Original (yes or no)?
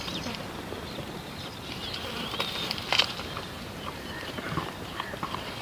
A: no